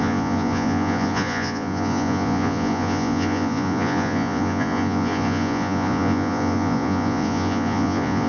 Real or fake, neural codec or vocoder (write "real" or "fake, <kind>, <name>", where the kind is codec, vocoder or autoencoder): fake, vocoder, Vocos